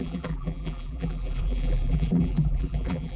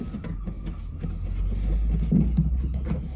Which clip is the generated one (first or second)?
first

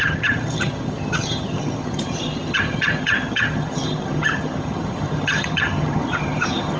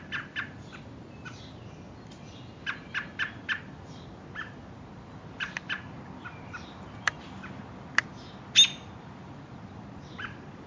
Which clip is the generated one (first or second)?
first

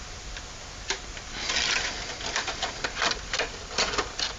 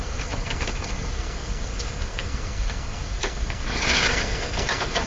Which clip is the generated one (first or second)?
second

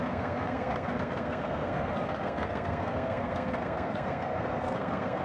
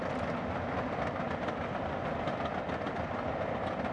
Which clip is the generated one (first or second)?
first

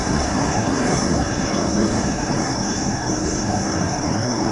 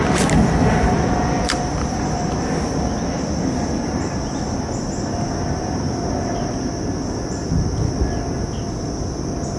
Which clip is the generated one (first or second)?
first